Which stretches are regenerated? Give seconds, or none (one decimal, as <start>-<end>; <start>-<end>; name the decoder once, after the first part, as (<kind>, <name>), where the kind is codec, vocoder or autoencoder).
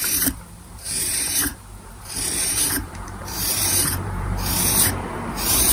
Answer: 0.0-5.7 (vocoder, BigVGAN v2)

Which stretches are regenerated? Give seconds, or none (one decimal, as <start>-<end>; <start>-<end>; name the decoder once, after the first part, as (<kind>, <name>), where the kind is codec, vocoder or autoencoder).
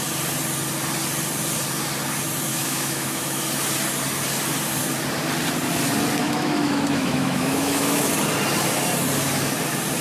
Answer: 2.5-3.4 (autoencoder, DAC-VAE); 6.2-8.1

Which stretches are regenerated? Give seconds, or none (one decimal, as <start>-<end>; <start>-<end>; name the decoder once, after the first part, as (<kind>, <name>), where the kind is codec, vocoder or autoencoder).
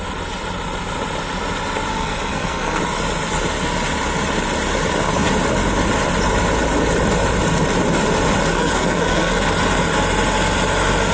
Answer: 1.9-2.8 (codec, SNAC); 8.5-9.4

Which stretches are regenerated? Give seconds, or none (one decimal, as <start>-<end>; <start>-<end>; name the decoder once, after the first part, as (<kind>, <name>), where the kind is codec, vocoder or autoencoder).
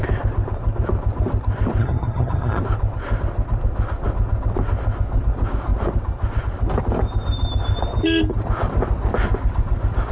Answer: 1.8-2.6 (vocoder, HiFi-GAN)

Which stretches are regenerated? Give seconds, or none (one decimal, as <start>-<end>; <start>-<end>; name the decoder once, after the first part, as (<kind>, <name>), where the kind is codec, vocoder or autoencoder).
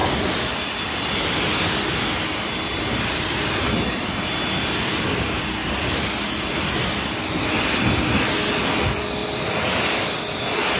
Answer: 9.2-10.4 (vocoder, BigVGAN v2)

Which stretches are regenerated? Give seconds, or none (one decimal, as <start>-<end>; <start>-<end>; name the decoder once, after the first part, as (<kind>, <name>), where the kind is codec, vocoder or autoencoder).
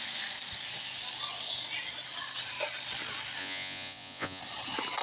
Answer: 3.4-4.4 (vocoder, Vocos)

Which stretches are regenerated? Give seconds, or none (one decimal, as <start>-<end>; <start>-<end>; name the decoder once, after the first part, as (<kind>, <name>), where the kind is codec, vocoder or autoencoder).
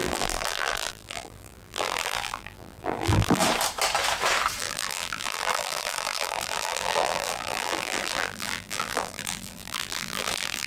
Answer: 0.0-3.4 (vocoder, BigVGAN v2); 4.6-10.7